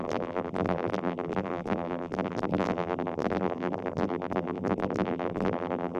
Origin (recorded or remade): remade